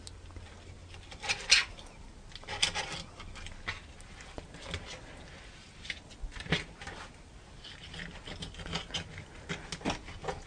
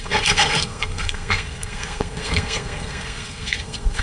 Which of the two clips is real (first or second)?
first